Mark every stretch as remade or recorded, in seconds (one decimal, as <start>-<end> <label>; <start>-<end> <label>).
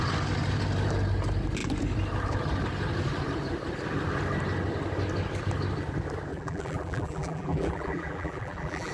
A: 0.0-6.3 recorded; 6.3-8.9 remade